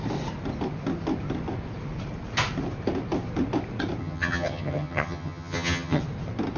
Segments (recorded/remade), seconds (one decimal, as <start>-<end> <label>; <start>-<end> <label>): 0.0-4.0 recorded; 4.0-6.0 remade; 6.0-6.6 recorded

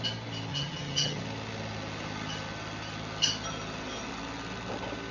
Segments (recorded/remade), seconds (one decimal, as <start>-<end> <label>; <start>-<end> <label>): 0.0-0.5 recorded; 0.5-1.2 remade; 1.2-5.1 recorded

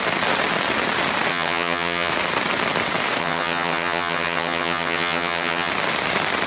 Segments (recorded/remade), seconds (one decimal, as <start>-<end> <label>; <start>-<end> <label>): 0.0-1.3 recorded; 1.3-2.1 remade; 2.1-3.2 recorded; 3.2-5.7 remade; 5.7-6.5 recorded

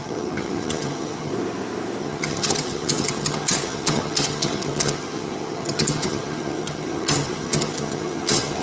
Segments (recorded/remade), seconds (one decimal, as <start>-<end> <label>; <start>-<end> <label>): 0.0-1.3 remade; 1.3-2.0 recorded; 2.0-8.6 remade

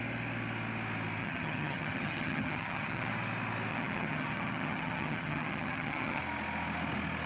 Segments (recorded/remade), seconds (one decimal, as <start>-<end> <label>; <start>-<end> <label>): 0.0-1.2 recorded; 1.2-3.1 remade; 3.1-3.7 recorded; 3.7-6.2 remade; 6.2-7.3 recorded

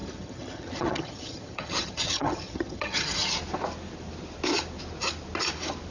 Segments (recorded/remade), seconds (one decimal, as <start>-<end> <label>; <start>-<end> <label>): 0.0-3.3 remade; 3.3-5.9 recorded

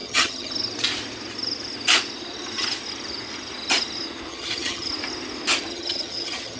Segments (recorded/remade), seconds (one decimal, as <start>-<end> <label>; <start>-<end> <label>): 0.0-0.5 remade; 0.5-4.3 recorded; 4.3-4.9 remade; 4.9-5.7 recorded; 5.7-6.6 remade